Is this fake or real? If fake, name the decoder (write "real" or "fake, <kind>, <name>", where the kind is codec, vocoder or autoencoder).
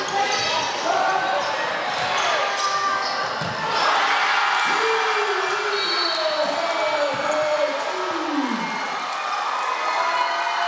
real